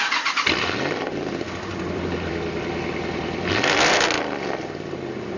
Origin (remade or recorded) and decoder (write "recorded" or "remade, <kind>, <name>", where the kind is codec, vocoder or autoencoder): remade, vocoder, BigVGAN v2